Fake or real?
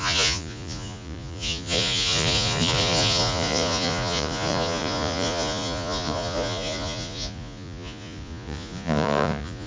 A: fake